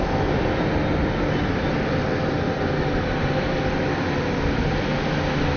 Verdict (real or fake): real